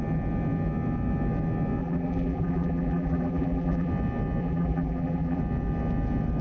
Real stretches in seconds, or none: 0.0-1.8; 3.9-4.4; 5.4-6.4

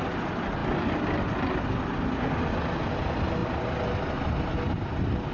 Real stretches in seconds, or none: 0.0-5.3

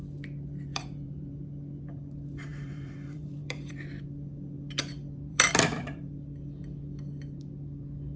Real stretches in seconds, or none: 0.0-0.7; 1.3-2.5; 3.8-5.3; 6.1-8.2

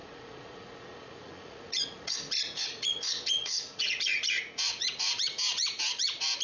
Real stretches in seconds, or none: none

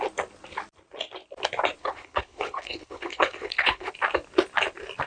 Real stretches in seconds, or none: 0.0-1.8; 3.9-5.1

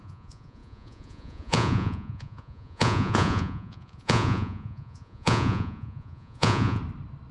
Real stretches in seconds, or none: 6.8-7.3